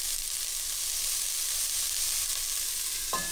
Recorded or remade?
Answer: recorded